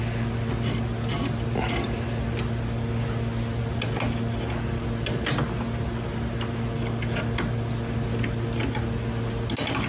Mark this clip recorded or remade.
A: recorded